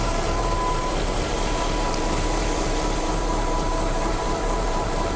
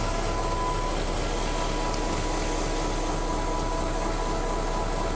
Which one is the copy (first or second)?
first